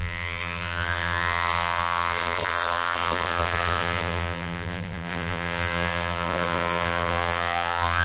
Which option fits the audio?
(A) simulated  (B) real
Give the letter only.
A